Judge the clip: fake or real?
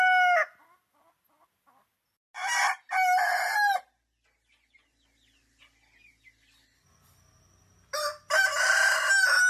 real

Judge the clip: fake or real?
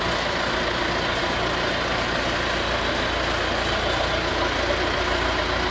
real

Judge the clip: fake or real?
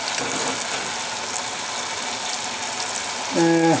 real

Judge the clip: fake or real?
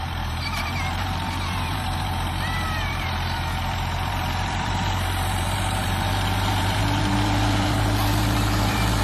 fake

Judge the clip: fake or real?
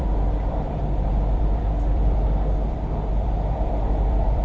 fake